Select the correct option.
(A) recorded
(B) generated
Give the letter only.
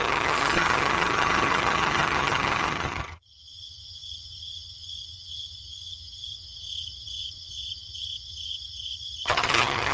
B